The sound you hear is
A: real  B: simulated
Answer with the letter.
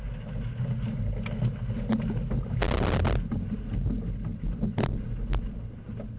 A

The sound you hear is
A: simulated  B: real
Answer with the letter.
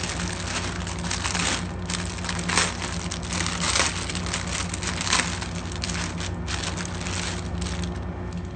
B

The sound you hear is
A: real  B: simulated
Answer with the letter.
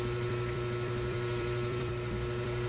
B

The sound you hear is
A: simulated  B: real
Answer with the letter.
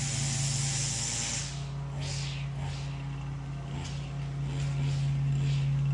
B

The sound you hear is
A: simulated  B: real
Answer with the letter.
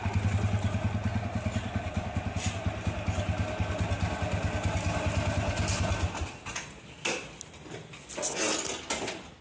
B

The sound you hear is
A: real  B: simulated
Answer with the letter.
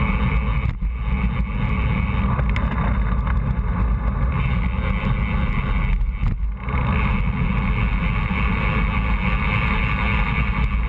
A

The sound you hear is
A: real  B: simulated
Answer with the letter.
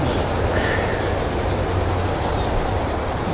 A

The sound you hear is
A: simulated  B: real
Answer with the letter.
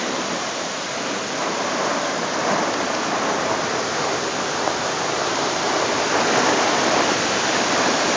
A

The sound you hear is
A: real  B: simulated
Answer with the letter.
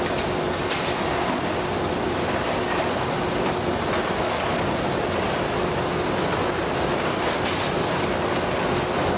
A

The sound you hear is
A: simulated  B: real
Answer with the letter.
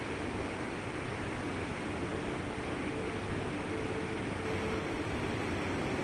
B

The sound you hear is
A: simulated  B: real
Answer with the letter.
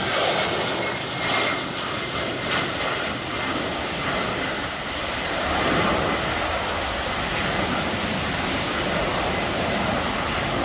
B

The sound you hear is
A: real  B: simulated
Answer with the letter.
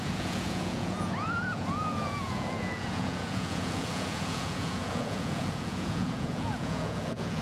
B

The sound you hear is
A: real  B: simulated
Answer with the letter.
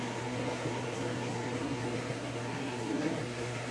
B